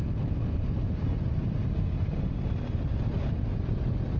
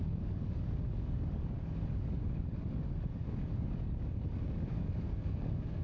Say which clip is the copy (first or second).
second